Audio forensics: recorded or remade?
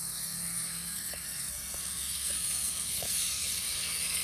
remade